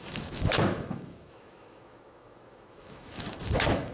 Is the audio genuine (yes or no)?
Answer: no